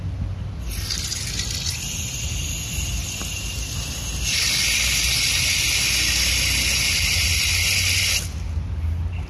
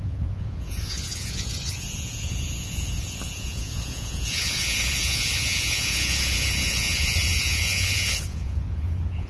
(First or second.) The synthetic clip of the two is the second